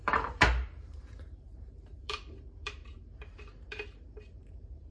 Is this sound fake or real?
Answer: fake